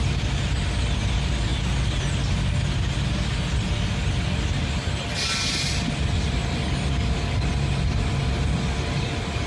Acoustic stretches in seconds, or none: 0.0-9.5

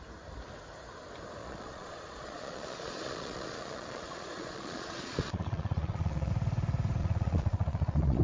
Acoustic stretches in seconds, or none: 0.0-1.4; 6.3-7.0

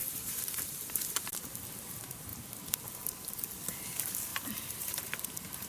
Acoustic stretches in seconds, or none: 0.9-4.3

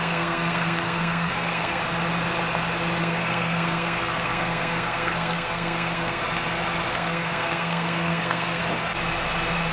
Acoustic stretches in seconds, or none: 1.8-3.0; 6.2-6.9; 8.6-9.7

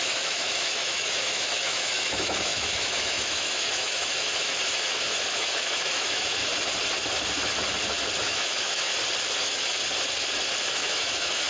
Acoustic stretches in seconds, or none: 6.5-8.2; 8.9-9.4; 9.8-10.6